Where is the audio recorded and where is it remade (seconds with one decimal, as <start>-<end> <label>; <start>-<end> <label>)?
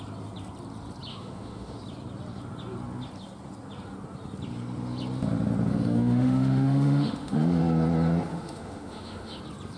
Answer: 0.0-1.1 recorded; 1.1-1.8 remade; 1.8-5.7 recorded; 5.7-7.6 remade; 7.6-8.3 recorded; 8.3-9.4 remade; 9.4-9.8 recorded